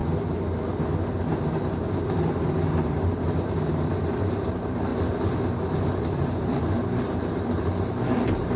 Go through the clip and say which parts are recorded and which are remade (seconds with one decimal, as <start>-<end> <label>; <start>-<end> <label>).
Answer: 0.0-1.2 recorded; 1.2-4.9 remade; 4.9-5.8 recorded; 5.8-8.6 remade